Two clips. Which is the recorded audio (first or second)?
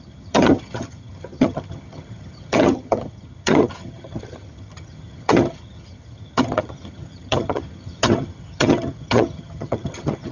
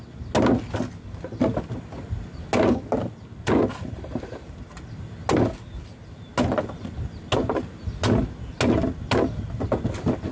second